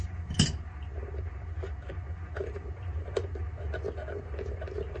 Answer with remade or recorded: recorded